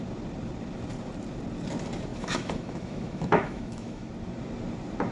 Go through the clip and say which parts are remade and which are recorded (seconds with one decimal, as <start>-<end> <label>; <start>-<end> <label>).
0.0-2.1 recorded; 2.1-4.1 remade; 4.1-5.1 recorded